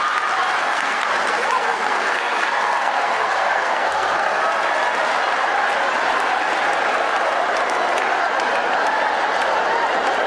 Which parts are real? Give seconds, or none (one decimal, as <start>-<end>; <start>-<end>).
0.0-0.6; 4.4-10.3